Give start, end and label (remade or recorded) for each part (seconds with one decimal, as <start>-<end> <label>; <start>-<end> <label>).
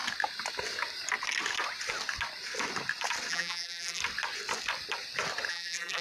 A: 0.0-3.3 recorded; 3.3-4.0 remade; 4.0-5.5 recorded; 5.5-6.0 remade